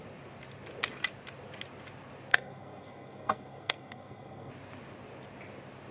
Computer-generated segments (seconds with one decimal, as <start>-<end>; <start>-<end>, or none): 2.3-4.5